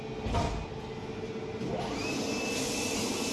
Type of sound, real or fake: real